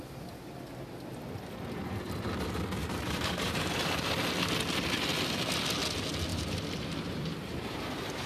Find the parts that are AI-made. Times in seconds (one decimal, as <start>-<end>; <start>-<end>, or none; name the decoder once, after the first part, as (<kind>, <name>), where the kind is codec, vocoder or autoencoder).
2.8-4.1 (vocoder, BigVGAN v2); 6.3-8.3